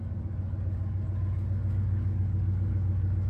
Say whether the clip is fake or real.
fake